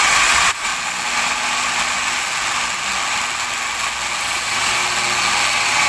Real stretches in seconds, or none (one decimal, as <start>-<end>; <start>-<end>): 0.7-4.2; 4.8-5.5